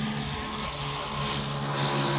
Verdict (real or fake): real